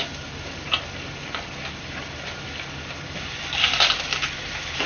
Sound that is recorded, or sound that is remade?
recorded